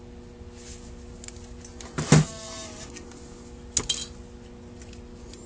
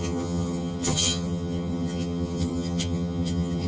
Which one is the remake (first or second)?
second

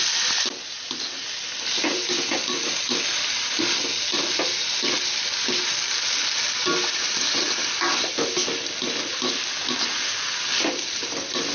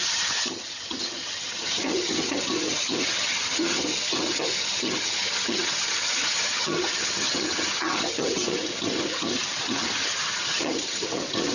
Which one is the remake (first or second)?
second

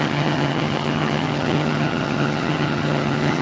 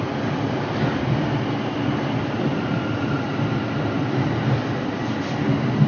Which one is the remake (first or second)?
first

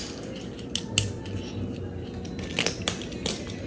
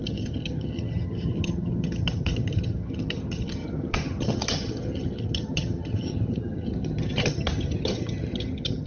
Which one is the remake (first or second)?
second